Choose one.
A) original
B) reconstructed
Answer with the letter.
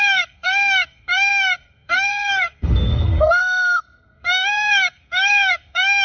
B